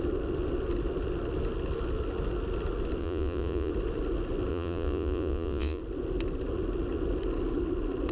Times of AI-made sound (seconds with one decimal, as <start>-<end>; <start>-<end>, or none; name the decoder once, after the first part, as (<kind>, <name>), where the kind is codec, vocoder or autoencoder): 3.0-3.7 (vocoder, Vocos); 4.5-5.8